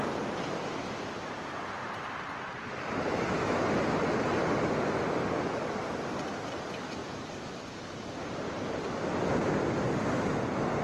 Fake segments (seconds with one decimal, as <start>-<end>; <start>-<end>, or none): none